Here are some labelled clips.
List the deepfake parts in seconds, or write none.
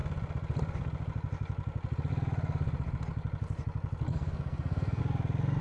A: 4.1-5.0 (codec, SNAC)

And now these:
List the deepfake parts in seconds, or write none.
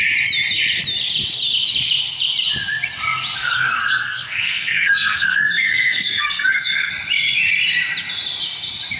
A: 3.4-6.9 (codec, SNAC)